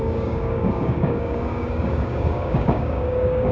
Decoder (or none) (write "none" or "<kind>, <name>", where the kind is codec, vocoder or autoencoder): codec, DAC